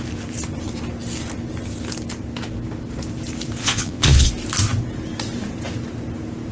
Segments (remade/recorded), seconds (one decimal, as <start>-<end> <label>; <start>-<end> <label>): 0.0-3.6 recorded; 3.6-4.3 remade; 4.3-6.5 recorded